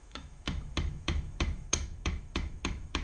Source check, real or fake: fake